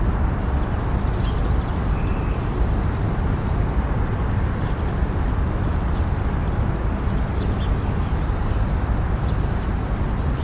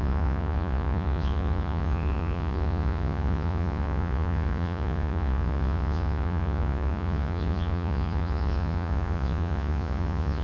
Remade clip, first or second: second